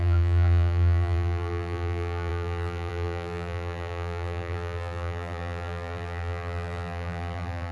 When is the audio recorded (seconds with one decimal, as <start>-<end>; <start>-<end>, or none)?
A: none